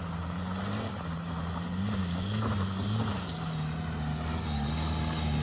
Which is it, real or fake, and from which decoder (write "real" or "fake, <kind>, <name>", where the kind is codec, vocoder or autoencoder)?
real